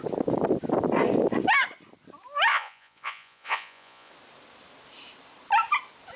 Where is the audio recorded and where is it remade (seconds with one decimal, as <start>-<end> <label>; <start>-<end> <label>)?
0.0-2.5 recorded; 2.5-4.1 remade; 4.1-6.2 recorded

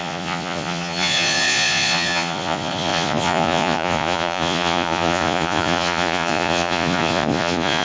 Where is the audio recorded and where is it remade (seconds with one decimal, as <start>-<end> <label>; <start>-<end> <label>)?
0.0-7.8 remade

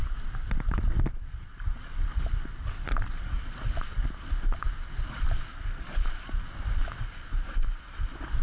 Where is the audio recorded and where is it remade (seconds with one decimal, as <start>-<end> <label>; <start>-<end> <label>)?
0.0-8.4 recorded

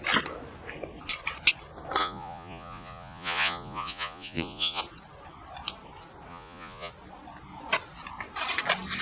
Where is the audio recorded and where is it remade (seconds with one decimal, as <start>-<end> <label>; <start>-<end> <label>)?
0.0-2.0 recorded; 2.0-4.8 remade; 4.8-6.3 recorded; 6.3-6.9 remade; 6.9-9.0 recorded

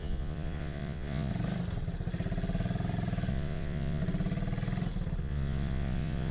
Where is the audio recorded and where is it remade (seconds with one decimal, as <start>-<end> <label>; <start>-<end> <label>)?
0.0-1.3 remade; 1.3-3.3 recorded; 3.3-4.0 remade; 4.0-5.2 recorded; 5.2-6.3 remade